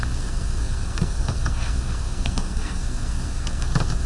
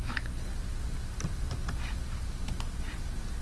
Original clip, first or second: second